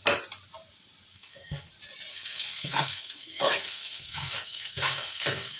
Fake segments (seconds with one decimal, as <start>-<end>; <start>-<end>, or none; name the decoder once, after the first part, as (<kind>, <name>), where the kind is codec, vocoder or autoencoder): 1.1-1.7 (codec, SNAC); 2.1-5.6